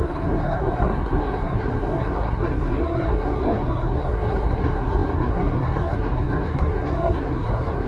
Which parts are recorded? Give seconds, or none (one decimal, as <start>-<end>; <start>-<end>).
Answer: none